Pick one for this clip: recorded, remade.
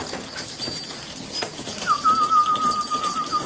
recorded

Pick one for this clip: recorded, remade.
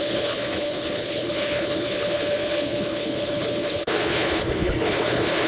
remade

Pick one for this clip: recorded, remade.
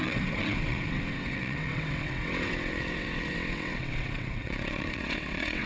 remade